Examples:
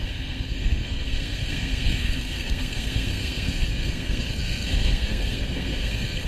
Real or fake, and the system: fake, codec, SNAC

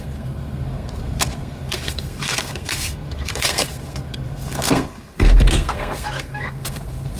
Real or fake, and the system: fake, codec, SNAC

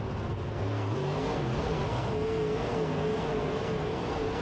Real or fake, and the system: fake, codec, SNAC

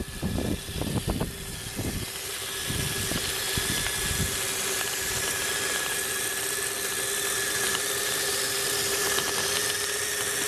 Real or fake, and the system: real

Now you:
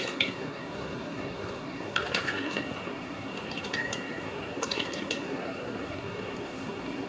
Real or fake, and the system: fake, codec, SNAC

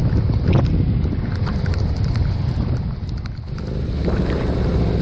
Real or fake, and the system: real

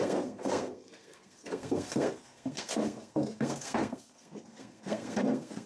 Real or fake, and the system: fake, codec, SNAC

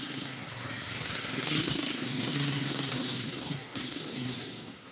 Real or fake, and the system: fake, codec, SNAC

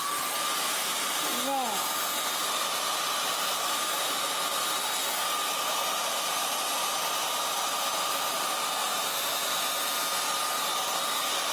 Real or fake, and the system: real